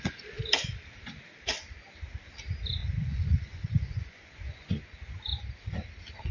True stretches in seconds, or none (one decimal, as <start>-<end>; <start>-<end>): 0.0-2.8; 4.8-6.3